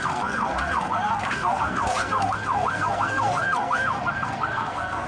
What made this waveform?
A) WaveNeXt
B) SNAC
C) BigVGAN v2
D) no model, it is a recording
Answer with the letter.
B